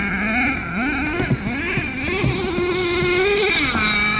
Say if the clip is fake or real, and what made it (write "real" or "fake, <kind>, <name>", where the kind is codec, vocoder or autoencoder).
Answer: real